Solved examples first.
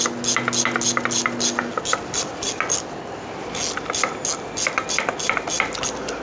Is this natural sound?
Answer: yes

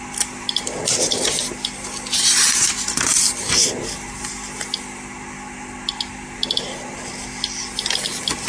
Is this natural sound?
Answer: yes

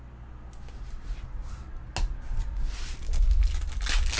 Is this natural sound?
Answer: yes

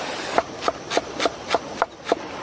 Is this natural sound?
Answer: yes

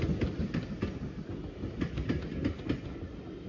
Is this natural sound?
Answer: yes